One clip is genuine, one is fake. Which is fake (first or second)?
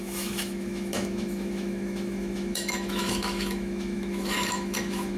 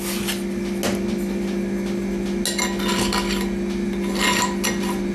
first